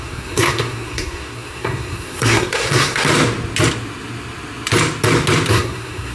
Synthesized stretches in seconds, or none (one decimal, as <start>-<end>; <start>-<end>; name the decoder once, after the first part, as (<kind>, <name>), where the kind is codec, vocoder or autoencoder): 0.0-3.1 (codec, SNAC); 5.5-6.1